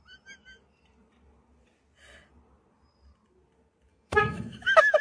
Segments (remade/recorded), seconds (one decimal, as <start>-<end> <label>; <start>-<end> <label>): 0.0-3.9 recorded; 3.9-5.0 remade